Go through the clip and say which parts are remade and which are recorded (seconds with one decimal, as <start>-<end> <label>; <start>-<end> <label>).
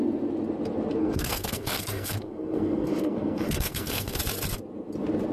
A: 0.0-1.0 recorded; 1.0-4.2 remade; 4.2-5.3 recorded